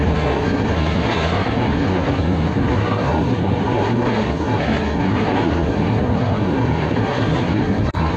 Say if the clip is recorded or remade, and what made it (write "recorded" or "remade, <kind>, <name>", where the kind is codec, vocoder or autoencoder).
remade, codec, SNAC